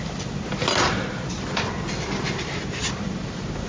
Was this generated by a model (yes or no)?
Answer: no